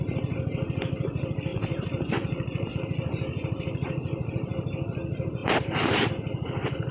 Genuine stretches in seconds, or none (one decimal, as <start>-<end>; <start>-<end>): 0.0-1.5; 2.7-5.4; 6.1-6.9